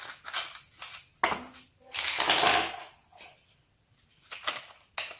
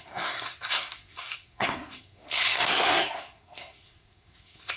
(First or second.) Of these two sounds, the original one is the first